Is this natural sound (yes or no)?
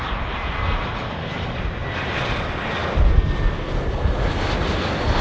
yes